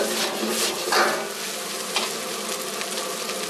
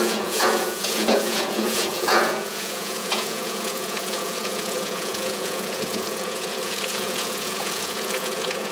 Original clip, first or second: first